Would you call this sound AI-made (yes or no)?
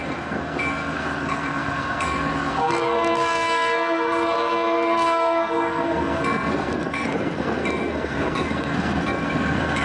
yes